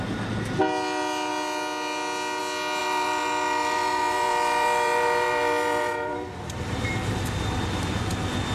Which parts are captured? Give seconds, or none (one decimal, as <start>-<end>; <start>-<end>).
0.0-2.8; 7.6-8.5